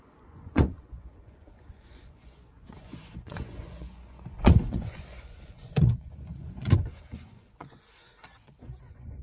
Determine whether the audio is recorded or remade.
remade